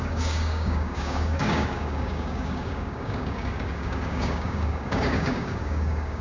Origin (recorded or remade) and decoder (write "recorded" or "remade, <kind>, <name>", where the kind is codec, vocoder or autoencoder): remade, codec, DAC